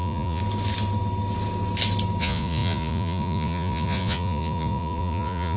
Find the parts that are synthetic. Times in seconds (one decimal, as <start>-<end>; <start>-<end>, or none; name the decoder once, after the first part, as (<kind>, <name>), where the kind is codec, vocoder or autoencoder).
0.0-0.4 (vocoder, Vocos); 2.2-5.6